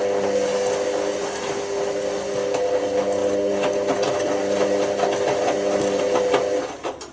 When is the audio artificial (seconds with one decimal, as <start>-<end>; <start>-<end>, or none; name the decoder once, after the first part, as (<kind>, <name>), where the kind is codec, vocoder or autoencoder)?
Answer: none